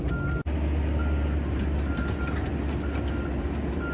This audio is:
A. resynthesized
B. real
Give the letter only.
B